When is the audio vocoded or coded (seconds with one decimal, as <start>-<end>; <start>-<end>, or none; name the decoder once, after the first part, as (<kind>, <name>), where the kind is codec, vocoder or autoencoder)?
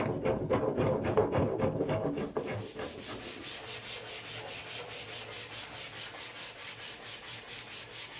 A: none